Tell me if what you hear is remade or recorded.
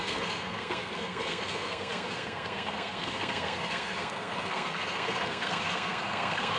remade